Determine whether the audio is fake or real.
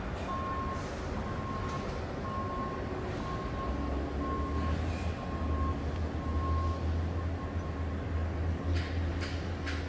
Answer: real